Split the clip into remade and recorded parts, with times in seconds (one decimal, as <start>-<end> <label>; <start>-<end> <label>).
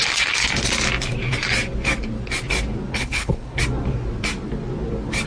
0.0-2.9 recorded; 2.9-3.6 remade; 3.6-5.3 recorded